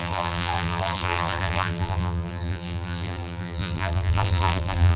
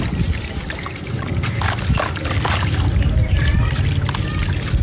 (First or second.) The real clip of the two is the second